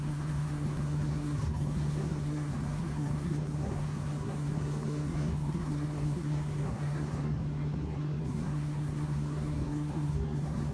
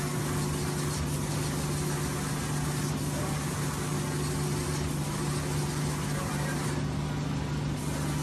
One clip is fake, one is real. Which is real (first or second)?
second